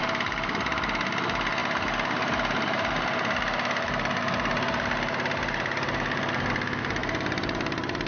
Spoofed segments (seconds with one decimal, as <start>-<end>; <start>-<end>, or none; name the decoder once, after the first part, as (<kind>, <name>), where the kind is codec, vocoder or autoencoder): 7.0-8.1 (vocoder, BigVGAN v2)